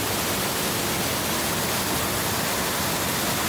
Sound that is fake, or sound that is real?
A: real